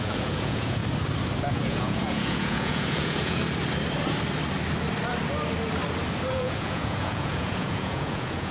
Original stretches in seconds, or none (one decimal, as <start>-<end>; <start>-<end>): 0.8-1.5; 3.4-6.3